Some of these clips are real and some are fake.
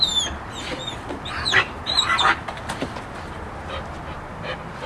real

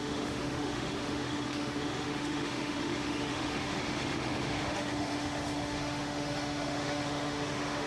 fake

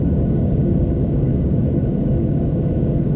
fake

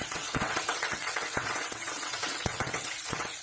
fake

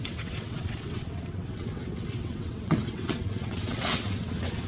fake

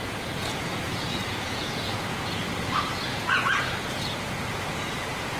fake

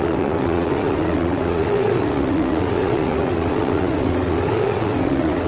fake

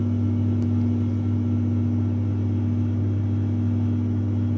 real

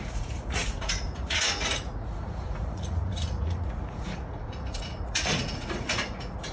fake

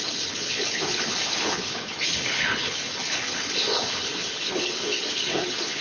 fake